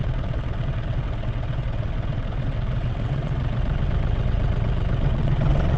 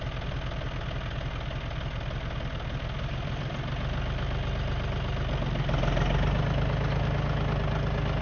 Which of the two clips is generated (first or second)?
first